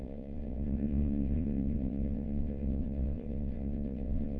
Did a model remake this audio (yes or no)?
yes